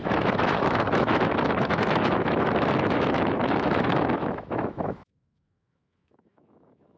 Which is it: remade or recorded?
remade